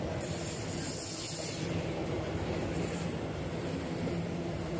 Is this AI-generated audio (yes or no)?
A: no